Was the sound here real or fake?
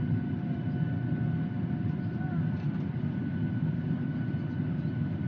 real